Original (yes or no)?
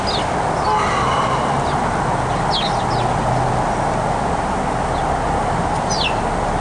yes